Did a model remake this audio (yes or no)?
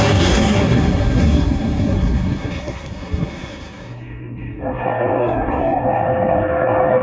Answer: yes